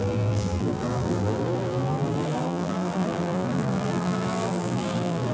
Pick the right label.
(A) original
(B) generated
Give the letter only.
B